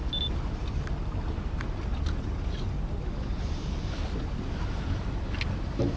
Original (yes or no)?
yes